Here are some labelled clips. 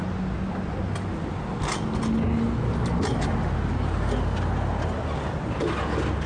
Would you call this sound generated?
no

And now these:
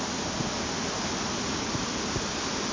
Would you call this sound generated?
no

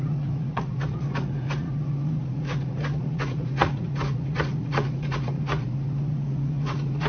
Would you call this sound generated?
yes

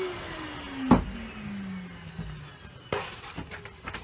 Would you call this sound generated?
no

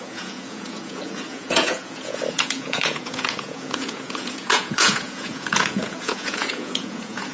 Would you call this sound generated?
yes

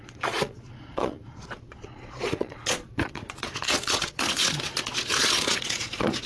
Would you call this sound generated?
yes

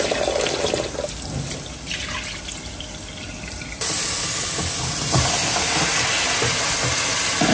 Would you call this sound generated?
no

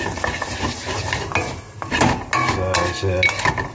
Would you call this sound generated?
no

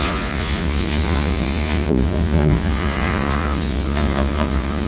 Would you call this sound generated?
yes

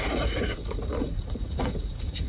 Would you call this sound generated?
yes